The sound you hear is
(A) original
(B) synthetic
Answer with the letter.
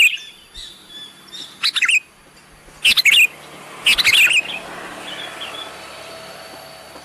A